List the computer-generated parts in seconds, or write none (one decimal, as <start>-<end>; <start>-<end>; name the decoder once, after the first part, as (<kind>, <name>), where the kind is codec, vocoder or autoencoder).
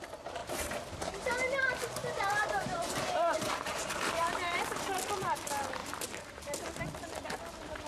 0.4-1.3 (vocoder, BigVGAN v2); 2.0-4.8; 5.8-6.8